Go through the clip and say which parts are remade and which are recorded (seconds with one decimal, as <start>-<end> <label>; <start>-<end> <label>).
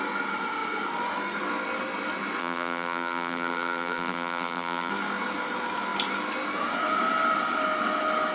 0.0-2.4 recorded; 2.4-4.9 remade; 4.9-8.3 recorded